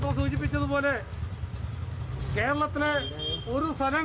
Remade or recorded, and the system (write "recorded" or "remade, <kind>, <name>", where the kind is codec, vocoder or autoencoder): recorded